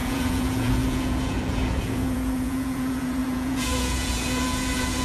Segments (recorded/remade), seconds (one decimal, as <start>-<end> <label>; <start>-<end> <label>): 0.0-5.0 remade